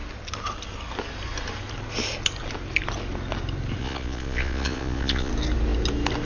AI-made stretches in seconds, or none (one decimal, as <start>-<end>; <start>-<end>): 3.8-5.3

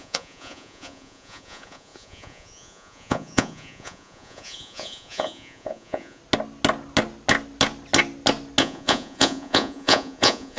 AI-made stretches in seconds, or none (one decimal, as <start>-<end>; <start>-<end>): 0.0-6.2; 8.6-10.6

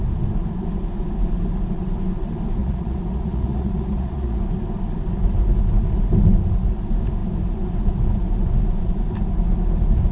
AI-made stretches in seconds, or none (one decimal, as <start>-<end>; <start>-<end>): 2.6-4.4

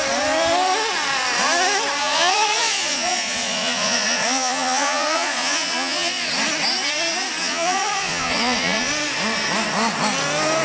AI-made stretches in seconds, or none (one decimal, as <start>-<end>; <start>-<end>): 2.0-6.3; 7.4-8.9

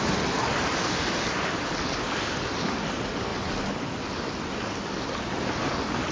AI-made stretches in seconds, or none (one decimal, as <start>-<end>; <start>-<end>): none

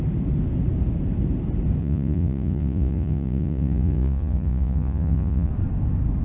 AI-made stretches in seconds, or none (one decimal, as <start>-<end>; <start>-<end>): 1.8-5.5

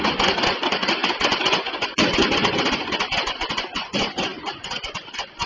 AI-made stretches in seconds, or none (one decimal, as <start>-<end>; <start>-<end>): 0.0-5.5

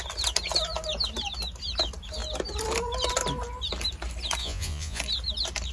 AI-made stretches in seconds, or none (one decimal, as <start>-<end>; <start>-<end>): 4.4-5.0